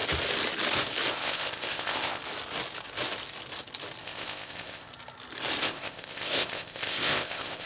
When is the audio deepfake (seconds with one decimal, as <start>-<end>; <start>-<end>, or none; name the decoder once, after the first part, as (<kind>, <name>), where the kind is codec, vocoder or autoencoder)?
1.1-2.2 (codec, ZipCodec); 4.0-4.9; 5.6-7.7